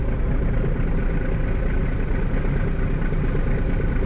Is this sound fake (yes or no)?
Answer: no